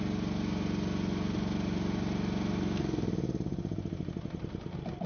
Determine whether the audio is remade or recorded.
recorded